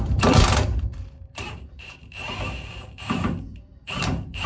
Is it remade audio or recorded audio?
remade